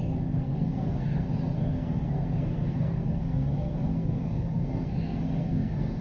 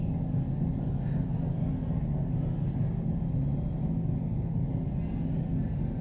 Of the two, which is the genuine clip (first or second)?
second